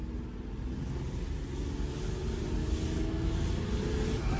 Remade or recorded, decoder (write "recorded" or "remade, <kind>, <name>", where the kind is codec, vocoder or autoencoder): recorded